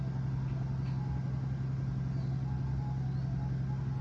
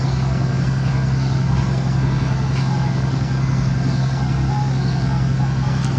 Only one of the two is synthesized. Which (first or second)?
second